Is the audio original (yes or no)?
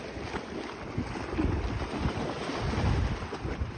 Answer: yes